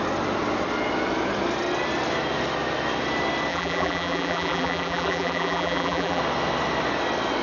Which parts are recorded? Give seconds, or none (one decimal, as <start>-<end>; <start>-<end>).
0.0-3.5; 6.2-7.4